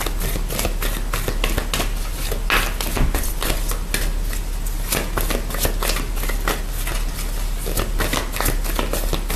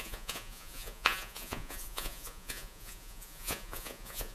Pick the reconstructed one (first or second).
second